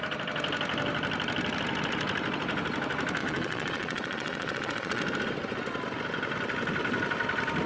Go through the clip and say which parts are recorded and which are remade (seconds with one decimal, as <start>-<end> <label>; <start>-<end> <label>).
0.0-3.2 recorded; 3.2-5.0 remade; 5.0-7.7 recorded